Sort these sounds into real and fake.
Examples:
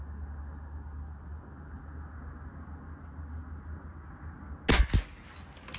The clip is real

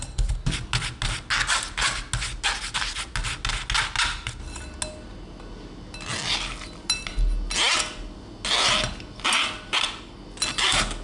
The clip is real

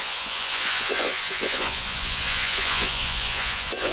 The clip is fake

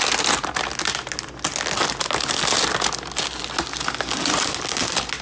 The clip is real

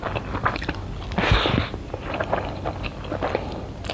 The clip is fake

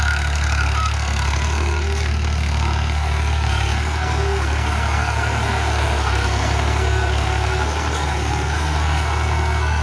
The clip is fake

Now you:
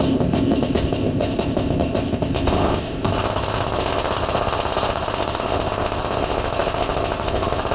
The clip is fake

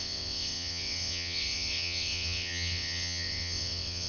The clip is fake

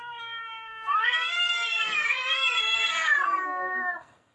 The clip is fake